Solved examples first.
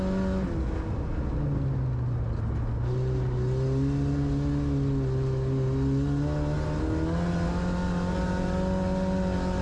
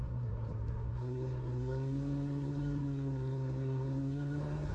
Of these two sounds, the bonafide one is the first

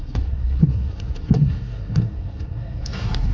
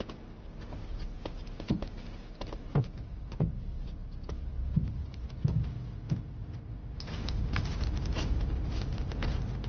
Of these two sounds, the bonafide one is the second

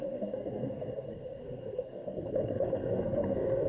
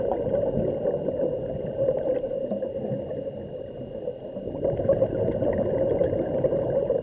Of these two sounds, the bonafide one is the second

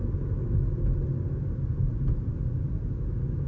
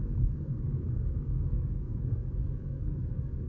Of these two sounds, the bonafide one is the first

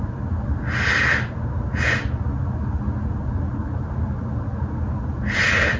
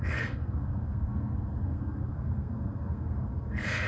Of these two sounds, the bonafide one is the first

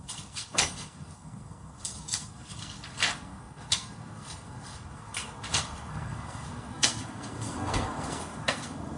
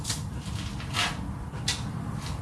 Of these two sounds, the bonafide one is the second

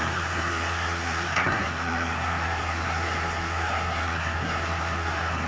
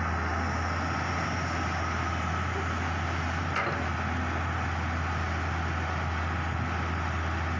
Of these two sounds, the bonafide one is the second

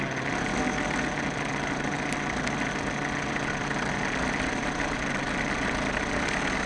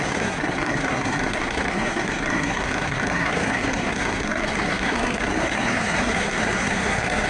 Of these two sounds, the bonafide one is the first